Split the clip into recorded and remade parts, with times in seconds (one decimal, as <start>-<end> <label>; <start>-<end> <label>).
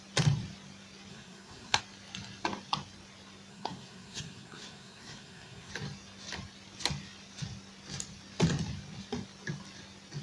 0.0-1.1 recorded; 1.1-1.8 remade; 1.8-3.5 recorded; 3.5-5.7 remade; 5.7-10.2 recorded